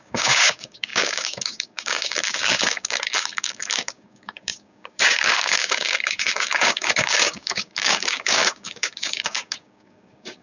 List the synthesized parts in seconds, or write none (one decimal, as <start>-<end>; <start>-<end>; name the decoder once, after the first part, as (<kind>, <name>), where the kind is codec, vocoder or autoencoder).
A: 0.0-10.4 (codec, DAC)